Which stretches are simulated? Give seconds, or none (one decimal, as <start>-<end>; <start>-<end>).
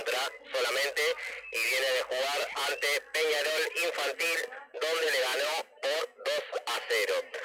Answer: 4.4-7.4